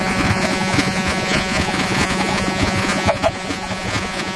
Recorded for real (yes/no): no